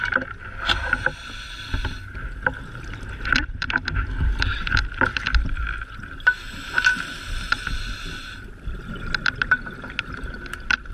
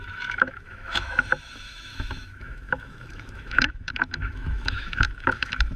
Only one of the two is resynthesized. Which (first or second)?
second